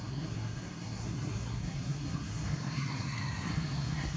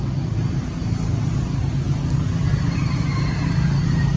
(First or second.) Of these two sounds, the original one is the second